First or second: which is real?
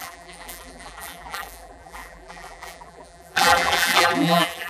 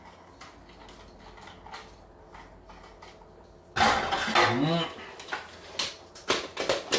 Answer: second